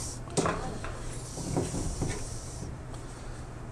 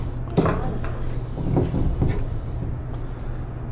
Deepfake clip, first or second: first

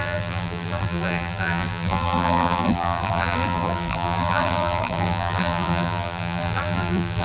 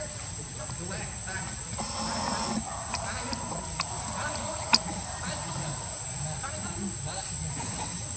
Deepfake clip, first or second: first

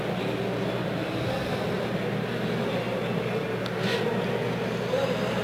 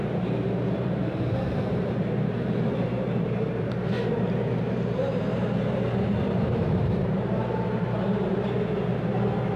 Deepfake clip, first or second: second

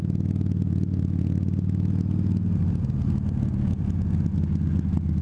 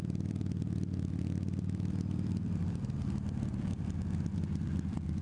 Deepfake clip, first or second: second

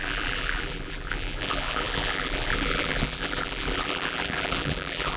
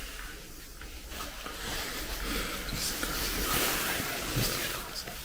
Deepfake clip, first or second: first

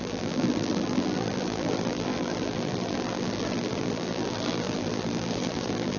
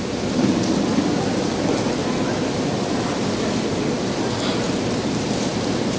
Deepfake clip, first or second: first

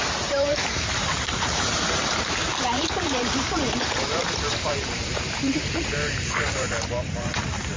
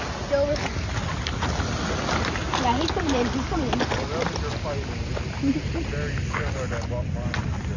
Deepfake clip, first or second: first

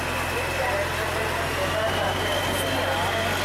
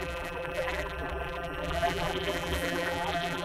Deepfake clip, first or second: second